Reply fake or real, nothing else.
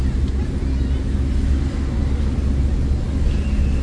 real